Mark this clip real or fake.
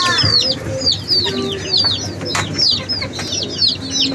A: real